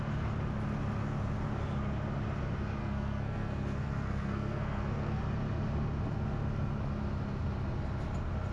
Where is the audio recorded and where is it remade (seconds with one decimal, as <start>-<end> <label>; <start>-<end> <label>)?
0.0-2.8 recorded; 2.8-5.2 remade; 5.2-8.5 recorded